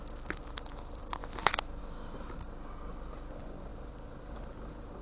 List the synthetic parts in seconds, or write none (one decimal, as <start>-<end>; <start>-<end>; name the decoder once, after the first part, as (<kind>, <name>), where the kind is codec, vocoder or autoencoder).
none